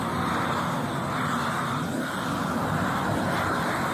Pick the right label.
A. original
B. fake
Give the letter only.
A